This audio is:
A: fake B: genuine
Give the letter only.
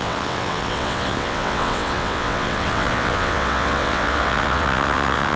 A